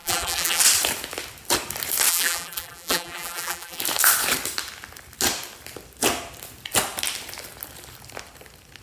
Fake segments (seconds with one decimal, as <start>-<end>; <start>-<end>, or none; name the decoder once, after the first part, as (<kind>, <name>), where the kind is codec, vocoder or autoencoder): 0.0-0.6 (vocoder, BigVGAN v2); 2.1-3.8